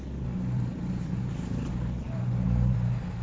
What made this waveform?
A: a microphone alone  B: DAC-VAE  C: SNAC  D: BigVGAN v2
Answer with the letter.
A